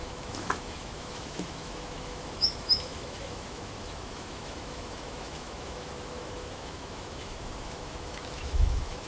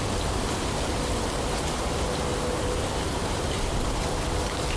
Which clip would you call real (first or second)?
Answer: second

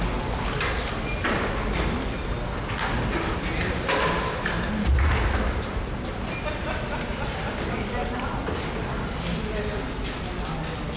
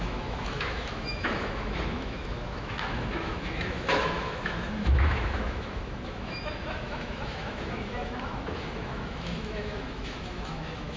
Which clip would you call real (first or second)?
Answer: first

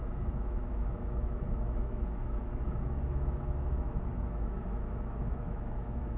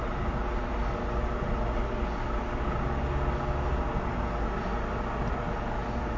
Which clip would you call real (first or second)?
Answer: second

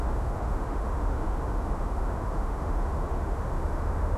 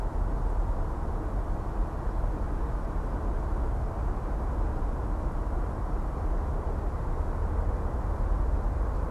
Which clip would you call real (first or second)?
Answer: second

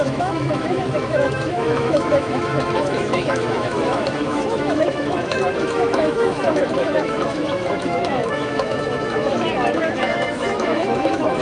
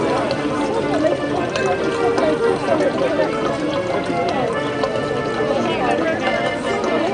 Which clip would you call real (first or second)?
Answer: second